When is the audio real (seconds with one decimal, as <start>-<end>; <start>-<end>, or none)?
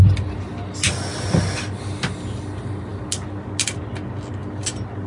0.0-5.1